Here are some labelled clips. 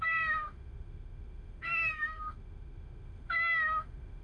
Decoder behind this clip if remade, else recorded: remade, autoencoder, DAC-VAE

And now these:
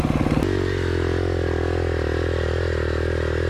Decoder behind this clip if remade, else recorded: recorded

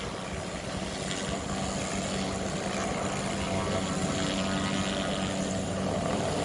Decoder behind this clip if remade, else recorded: recorded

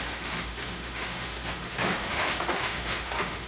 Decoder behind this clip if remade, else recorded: remade, autoencoder, DAC-VAE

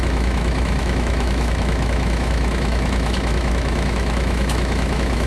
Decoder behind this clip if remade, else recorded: remade, autoencoder, DAC-VAE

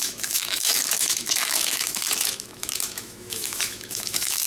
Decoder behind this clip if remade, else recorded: remade, autoencoder, DAC-VAE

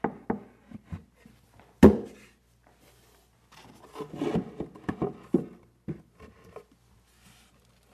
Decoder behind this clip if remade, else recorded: recorded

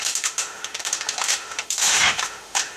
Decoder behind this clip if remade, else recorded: remade, autoencoder, DAC-VAE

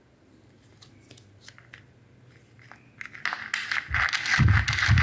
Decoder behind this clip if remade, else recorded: recorded